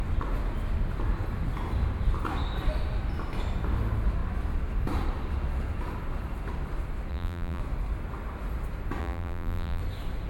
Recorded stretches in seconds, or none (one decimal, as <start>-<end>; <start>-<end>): 0.0-7.1; 7.6-9.0; 9.8-10.3